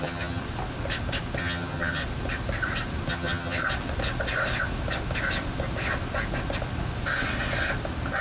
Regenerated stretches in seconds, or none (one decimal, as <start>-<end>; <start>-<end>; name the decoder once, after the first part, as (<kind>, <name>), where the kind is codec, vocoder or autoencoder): 0.0-0.4 (vocoder, HiFi-GAN); 1.4-2.0; 3.1-3.6